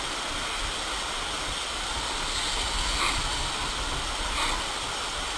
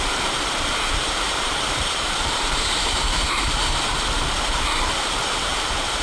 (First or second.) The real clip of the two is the first